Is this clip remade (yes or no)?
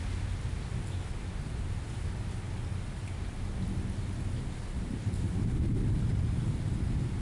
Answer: no